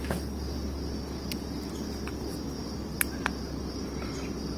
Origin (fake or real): real